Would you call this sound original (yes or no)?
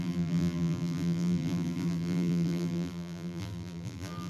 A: no